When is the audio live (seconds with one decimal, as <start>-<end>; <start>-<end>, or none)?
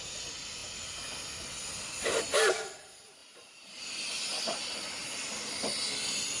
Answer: 0.0-3.2; 3.9-6.4